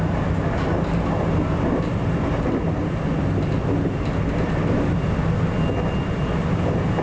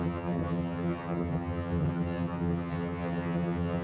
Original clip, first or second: first